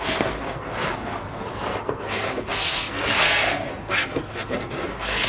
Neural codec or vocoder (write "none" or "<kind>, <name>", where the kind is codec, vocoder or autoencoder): codec, SNAC